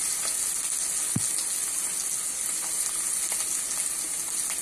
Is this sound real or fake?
real